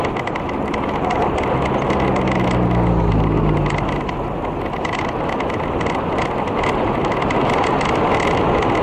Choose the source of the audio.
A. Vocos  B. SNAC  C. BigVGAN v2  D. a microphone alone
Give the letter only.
D